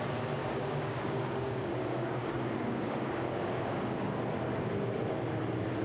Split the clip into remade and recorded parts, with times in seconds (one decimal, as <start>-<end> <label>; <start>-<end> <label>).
0.0-0.4 recorded; 0.4-3.9 remade; 3.9-5.8 recorded